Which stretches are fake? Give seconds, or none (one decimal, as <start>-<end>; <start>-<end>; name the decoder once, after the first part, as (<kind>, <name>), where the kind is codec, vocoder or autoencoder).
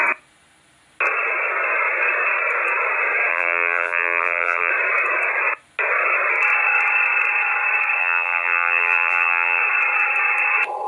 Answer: 3.3-4.7 (vocoder, BigVGAN v2); 8.0-9.6